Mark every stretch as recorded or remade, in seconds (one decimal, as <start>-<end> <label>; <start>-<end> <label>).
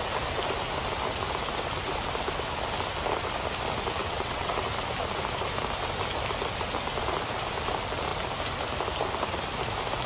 0.0-4.0 recorded; 4.0-4.5 remade; 4.5-10.1 recorded